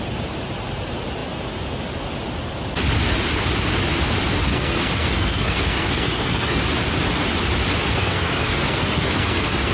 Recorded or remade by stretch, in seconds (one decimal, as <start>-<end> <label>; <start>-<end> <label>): 0.0-4.5 recorded; 4.5-6.6 remade; 6.6-7.9 recorded; 7.9-9.7 remade

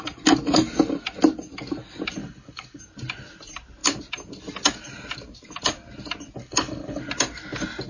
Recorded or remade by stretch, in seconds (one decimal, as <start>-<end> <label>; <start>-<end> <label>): 0.0-2.2 recorded; 2.2-2.8 remade; 2.8-6.4 recorded; 6.4-7.0 remade; 7.0-7.9 recorded

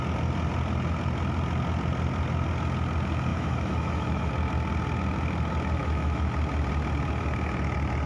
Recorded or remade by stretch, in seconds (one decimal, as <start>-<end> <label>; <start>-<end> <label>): 0.0-3.3 recorded; 3.3-4.3 remade; 4.3-5.8 recorded; 5.8-6.3 remade; 6.3-8.1 recorded